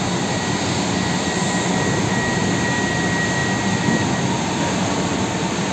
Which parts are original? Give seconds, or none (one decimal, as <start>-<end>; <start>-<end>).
0.0-5.7